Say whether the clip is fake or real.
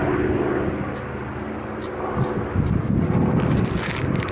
real